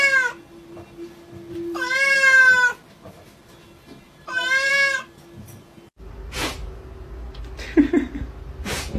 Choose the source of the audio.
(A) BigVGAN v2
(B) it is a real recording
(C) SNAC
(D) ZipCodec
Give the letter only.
B